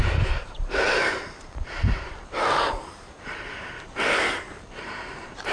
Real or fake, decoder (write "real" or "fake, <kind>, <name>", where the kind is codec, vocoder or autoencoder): fake, vocoder, BigVGAN v2